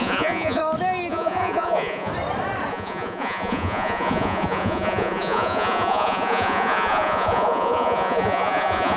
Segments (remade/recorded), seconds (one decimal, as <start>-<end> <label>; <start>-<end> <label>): 0.0-0.6 remade; 0.6-1.1 recorded; 1.1-2.1 remade; 2.1-2.7 recorded; 2.7-9.0 remade